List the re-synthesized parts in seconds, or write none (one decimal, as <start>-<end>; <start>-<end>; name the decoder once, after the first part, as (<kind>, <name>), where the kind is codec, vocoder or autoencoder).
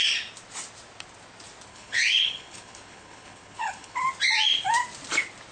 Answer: 1.7-4.0 (codec, HILCodec)